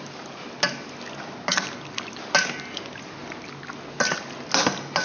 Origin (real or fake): real